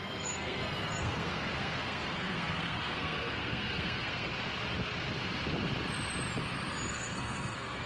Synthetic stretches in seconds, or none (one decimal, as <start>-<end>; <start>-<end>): 0.0-4.3; 6.9-7.9

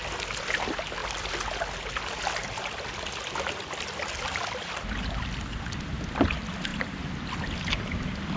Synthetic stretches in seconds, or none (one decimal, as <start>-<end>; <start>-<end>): none